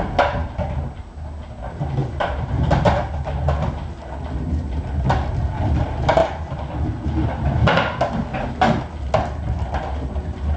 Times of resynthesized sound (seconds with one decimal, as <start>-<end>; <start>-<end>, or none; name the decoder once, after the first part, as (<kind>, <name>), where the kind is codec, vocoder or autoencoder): 2.0-2.7 (vocoder, BigVGAN v2)